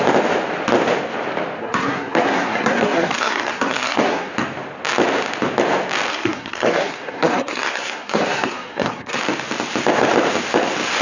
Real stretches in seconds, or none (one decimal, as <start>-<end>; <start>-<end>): 0.0-1.6; 4.3-6.1; 9.2-11.0